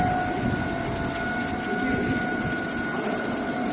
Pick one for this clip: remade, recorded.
recorded